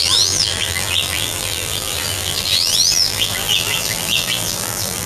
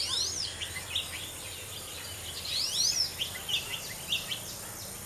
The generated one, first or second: first